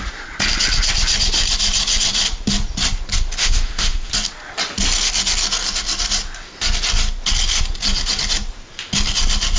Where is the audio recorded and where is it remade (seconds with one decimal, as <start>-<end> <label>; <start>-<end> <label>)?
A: 0.0-3.4 recorded; 3.4-4.1 remade; 4.1-9.6 recorded